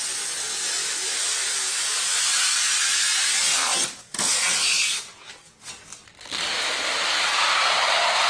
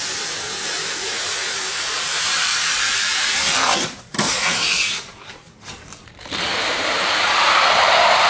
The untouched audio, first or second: first